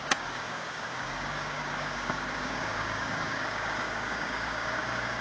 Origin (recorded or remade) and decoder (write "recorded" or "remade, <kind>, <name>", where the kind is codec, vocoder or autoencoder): remade, codec, DAC